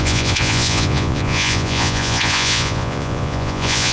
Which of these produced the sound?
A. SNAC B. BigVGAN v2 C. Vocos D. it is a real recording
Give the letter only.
C